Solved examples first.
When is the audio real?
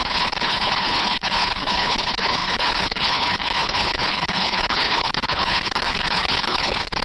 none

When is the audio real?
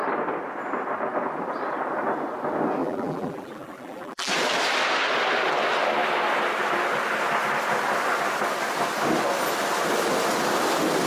0.0-2.8; 4.3-11.1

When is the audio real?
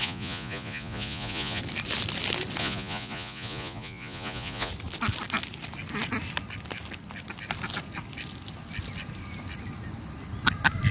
1.6-2.6; 4.7-10.9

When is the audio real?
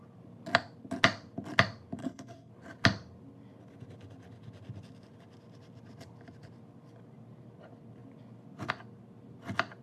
0.0-2.0; 2.5-9.8